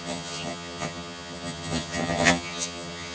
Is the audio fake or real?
fake